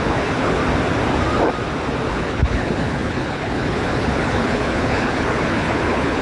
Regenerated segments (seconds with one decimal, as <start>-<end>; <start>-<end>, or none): 0.0-0.6; 2.1-6.2